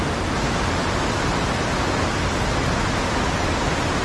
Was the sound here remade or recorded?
recorded